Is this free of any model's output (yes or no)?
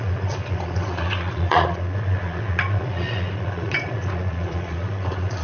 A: no